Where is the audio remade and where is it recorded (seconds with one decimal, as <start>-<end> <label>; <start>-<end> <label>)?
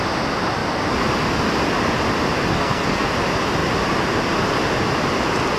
0.0-2.5 recorded; 2.5-3.1 remade; 3.1-5.6 recorded